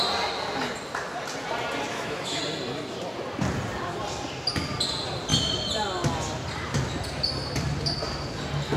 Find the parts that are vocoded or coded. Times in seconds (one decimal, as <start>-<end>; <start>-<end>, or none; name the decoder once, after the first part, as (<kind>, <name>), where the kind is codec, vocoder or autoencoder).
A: 1.9-2.4 (autoencoder, DAC-VAE)